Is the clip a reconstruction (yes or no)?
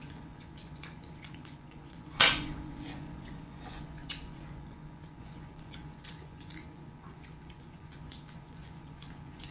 yes